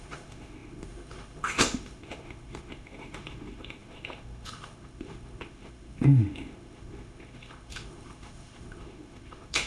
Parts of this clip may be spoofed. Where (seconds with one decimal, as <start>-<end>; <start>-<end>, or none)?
0.0-9.7